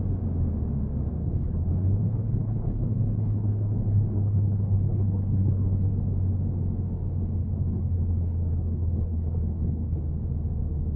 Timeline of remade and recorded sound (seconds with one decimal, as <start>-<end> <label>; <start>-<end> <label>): 0.0-1.2 recorded; 1.2-5.9 remade; 5.9-7.4 recorded; 7.4-10.0 remade; 10.0-11.0 recorded